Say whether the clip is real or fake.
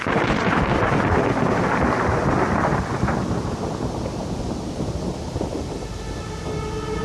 real